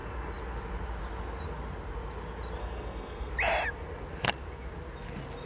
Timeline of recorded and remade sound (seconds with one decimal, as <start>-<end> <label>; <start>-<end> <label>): 0.0-2.6 recorded; 2.6-3.3 remade; 3.3-5.5 recorded